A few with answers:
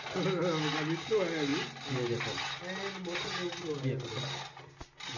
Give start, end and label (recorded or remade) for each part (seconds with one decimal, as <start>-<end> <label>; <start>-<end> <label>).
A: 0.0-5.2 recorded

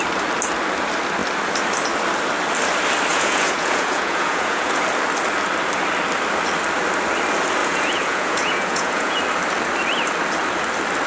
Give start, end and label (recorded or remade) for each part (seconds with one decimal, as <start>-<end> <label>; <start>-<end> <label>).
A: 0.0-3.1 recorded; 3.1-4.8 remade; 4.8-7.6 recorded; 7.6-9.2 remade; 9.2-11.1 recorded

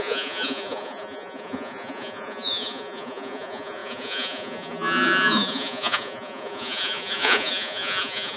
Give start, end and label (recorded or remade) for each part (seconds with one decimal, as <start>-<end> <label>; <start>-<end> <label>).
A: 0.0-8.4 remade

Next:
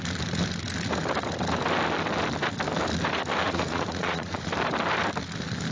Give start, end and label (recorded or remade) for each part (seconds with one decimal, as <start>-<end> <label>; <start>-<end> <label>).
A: 0.0-3.4 recorded; 3.4-4.5 remade; 4.5-5.7 recorded

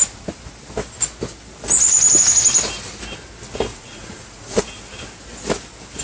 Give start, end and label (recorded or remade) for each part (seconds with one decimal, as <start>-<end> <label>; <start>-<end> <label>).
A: 0.0-3.7 recorded; 3.7-4.6 remade; 4.6-6.0 recorded

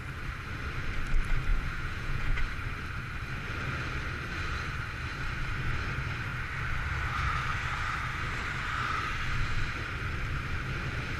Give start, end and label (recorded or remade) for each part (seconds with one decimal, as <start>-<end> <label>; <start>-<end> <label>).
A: 0.0-1.5 recorded; 1.5-2.4 remade; 2.4-11.2 recorded

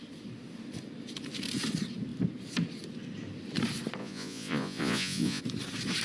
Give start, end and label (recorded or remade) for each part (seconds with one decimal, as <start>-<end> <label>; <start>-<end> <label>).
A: 0.0-4.0 recorded; 4.0-5.4 remade; 5.4-6.0 recorded